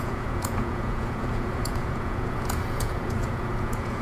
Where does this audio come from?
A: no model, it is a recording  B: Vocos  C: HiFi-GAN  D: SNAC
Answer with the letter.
B